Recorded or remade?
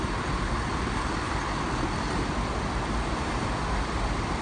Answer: recorded